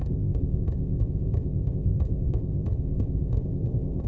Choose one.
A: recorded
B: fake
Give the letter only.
B